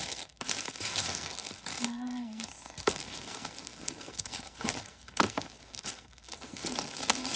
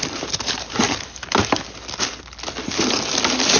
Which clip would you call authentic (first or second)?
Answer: second